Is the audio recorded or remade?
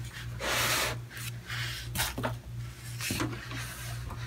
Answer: recorded